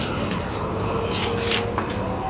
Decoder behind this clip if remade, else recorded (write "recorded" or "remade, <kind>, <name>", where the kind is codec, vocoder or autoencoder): recorded